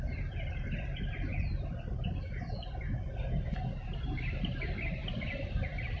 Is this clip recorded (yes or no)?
yes